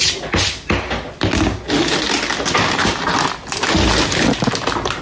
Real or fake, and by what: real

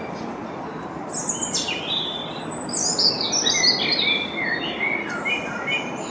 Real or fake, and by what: real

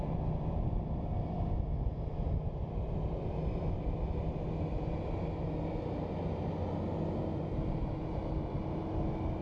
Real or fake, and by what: real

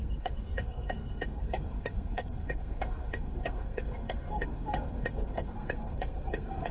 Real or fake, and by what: fake, codec, SNAC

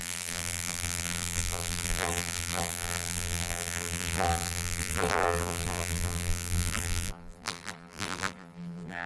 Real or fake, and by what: fake, vocoder, BigVGAN v2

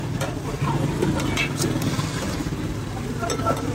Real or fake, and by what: real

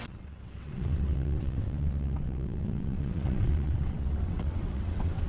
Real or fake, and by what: fake, vocoder, WaveNeXt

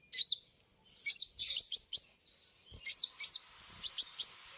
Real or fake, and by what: real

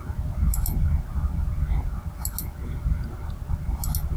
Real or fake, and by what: real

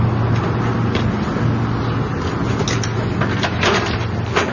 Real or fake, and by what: real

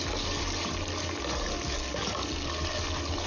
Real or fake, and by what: real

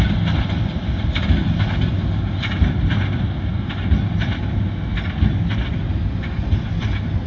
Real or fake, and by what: real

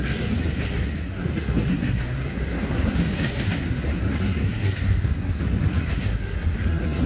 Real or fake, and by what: fake, codec, SNAC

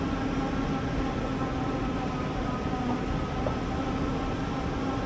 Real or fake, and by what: real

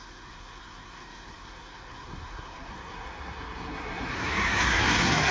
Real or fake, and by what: fake, codec, SNAC